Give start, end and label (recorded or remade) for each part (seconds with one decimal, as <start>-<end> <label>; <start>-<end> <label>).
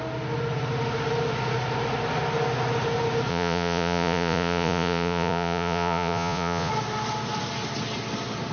0.0-3.3 recorded; 3.3-6.7 remade; 6.7-8.5 recorded